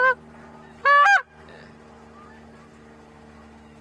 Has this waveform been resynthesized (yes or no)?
no